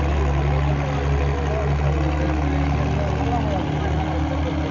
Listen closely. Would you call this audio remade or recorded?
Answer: recorded